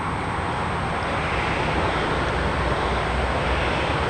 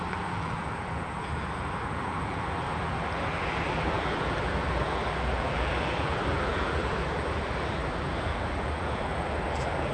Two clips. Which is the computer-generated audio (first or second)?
second